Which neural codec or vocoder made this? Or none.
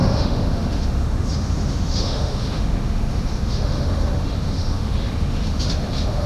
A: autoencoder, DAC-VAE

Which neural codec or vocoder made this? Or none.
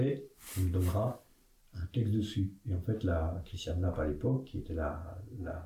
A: none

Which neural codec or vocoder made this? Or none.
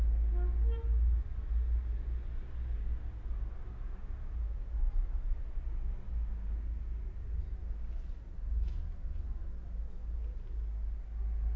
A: none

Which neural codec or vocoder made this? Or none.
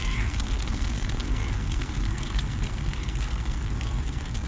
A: codec, SNAC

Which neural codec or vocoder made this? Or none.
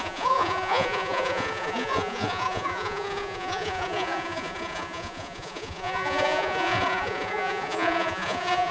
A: vocoder, Vocos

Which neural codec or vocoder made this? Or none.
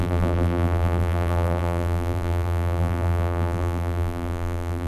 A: vocoder, BigVGAN v2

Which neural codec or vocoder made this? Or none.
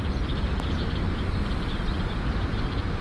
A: none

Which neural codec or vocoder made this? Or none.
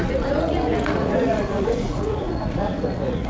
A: vocoder, Vocos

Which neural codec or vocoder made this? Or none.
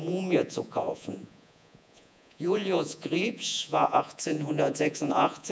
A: vocoder, Vocos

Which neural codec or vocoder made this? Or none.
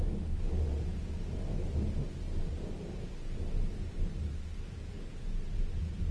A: vocoder, BigVGAN v2